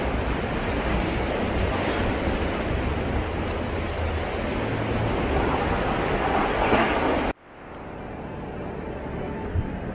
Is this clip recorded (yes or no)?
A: yes